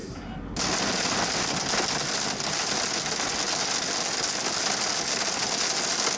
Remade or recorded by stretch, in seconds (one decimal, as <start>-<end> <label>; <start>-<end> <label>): 0.0-6.2 recorded